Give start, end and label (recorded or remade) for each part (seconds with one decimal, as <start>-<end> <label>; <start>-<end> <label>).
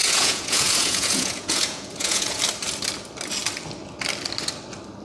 0.0-2.4 remade; 2.4-5.0 recorded